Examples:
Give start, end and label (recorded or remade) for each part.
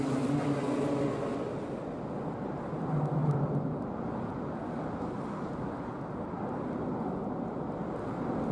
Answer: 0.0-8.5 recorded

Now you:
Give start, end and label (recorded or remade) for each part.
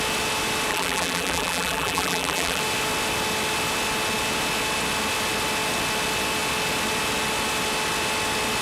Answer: 0.0-0.7 recorded; 0.7-2.6 remade; 2.6-8.6 recorded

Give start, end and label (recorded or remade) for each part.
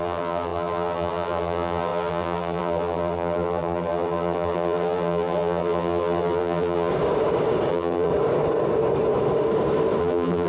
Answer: 0.0-6.9 remade; 6.9-7.7 recorded; 7.7-8.1 remade; 8.1-10.0 recorded; 10.0-10.5 remade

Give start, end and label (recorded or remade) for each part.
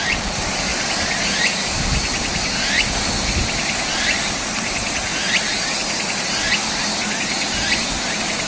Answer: 0.0-8.5 recorded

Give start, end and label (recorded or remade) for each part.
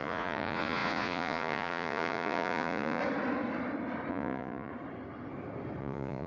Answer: 0.0-3.0 remade; 3.0-4.1 recorded; 4.1-4.7 remade; 4.7-5.8 recorded; 5.8-6.3 remade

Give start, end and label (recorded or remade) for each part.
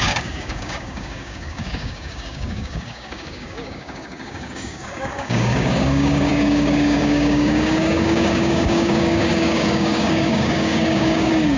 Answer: 0.0-11.6 remade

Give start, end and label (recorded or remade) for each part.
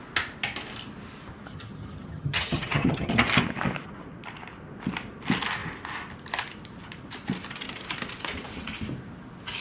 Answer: 0.0-1.5 recorded; 1.5-3.1 remade; 3.1-9.6 recorded